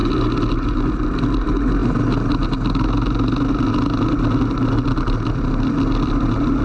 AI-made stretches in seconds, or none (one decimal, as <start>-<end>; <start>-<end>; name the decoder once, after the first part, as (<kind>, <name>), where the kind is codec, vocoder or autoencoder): none

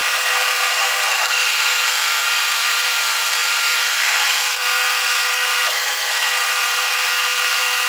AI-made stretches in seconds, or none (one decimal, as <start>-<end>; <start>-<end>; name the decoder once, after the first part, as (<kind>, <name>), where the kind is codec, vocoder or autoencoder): 0.0-7.9 (codec, SNAC)

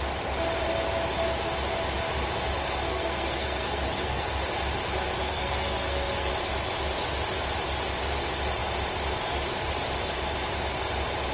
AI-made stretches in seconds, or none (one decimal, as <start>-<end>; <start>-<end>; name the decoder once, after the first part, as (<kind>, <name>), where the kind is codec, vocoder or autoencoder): 2.9-4.3 (codec, SNAC); 5.3-6.3